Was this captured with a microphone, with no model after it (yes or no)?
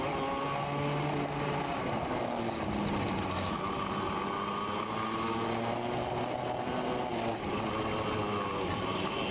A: yes